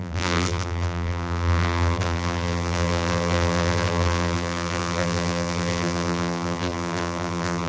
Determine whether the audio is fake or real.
fake